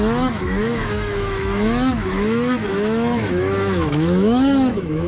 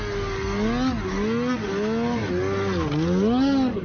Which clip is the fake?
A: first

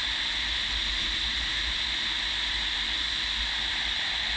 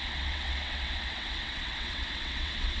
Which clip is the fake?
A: second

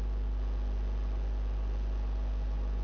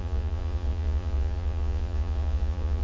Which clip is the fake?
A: second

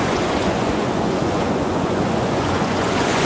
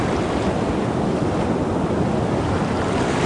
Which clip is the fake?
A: first